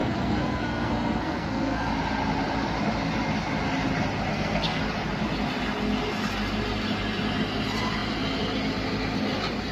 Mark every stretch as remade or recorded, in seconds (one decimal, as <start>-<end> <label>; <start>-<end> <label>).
0.0-1.9 remade; 1.9-4.3 recorded; 4.3-4.8 remade; 4.8-9.7 recorded